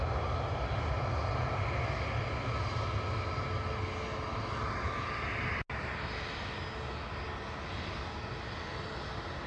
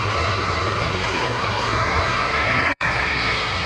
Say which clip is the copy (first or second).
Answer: second